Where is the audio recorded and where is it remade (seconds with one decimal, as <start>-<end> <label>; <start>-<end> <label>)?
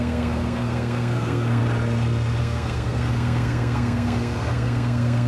0.0-1.6 remade; 1.6-2.4 recorded; 2.4-5.3 remade